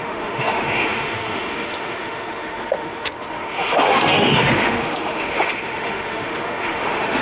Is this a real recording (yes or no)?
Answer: no